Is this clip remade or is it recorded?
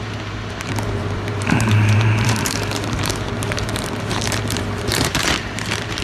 remade